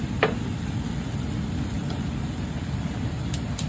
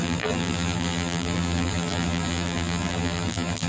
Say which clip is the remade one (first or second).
second